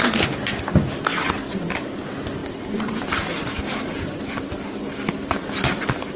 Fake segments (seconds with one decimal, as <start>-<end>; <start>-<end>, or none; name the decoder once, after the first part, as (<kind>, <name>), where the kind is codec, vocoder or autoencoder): none